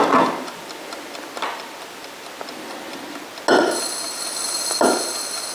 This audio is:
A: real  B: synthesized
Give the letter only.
A